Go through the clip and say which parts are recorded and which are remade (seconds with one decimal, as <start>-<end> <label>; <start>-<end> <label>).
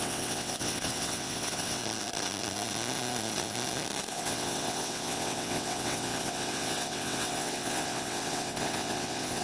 0.0-1.8 remade; 1.8-4.1 recorded; 4.1-9.4 remade